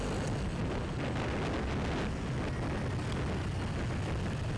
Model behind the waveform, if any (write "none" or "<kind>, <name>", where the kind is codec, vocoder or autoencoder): none